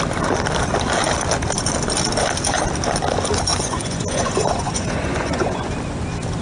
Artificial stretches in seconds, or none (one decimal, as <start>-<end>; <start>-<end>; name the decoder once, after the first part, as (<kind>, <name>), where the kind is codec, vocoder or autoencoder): 3.5-5.7 (vocoder, Vocos)